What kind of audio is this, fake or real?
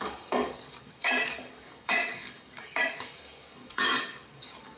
fake